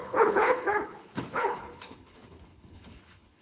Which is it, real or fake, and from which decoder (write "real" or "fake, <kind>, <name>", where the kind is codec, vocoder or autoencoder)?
fake, codec, HILCodec